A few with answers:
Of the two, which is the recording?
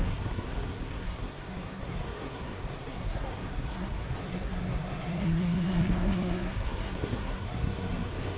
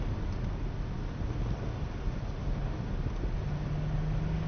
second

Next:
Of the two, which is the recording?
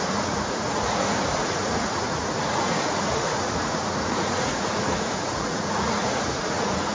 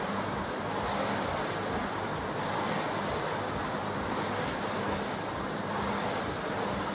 second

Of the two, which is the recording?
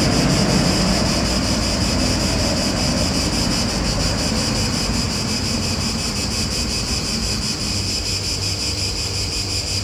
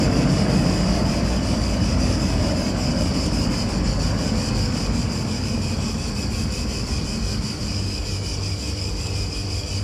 first